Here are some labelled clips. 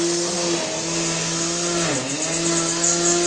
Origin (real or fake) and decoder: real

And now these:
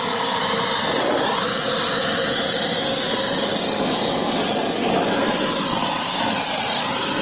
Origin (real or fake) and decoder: real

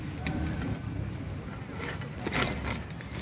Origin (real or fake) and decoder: real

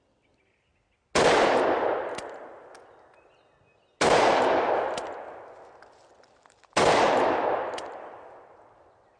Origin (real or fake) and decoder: real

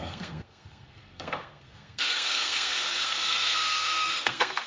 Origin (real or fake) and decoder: fake, codec, SNAC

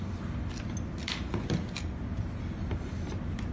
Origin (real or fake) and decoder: real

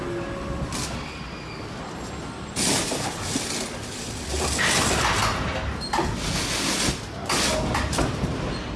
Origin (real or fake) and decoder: real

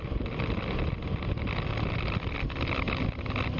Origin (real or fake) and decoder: real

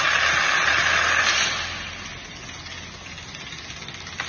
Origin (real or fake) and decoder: real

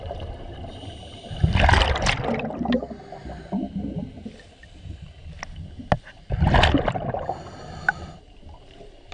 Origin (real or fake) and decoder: real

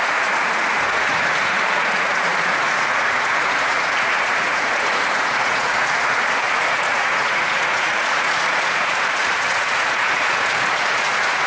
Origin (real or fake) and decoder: fake, vocoder, Vocos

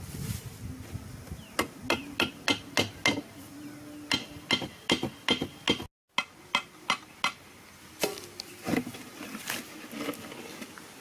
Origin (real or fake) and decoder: real